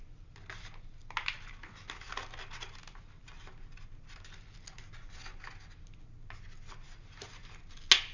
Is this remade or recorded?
recorded